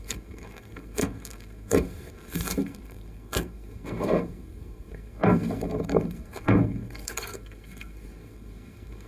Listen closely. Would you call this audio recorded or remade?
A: remade